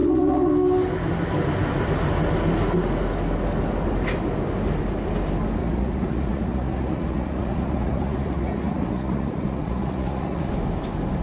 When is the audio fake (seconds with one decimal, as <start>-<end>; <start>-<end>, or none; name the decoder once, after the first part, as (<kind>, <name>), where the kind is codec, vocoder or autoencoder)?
0.0-0.5 (vocoder, Vocos); 5.6-10.5

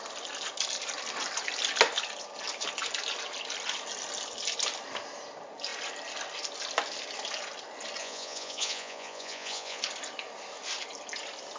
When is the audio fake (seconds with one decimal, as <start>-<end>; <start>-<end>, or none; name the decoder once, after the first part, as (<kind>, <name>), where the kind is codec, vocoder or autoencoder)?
8.0-9.8 (vocoder, Vocos)

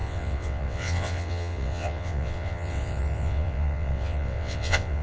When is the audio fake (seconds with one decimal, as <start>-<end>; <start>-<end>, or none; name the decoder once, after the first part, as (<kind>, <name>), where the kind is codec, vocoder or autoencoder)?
0.0-5.0 (vocoder, WaveNeXt)